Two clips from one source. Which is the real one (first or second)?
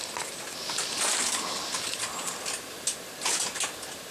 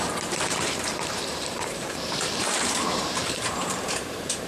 first